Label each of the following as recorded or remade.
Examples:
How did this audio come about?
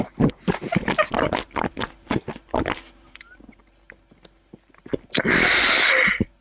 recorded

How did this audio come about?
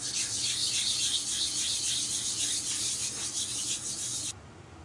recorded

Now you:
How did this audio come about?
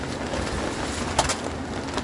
recorded